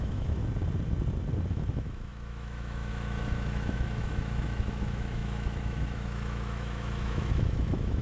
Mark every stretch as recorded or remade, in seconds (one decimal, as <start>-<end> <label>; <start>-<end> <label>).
0.0-0.4 remade; 0.4-1.5 recorded; 1.5-8.0 remade